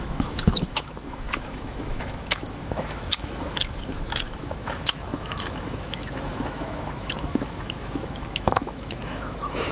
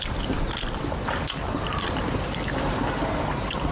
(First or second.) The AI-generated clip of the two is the first